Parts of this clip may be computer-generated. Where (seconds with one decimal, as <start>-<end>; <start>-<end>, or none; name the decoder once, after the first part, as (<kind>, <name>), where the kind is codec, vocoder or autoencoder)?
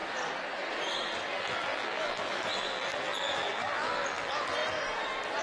1.4-4.6 (vocoder, BigVGAN v2)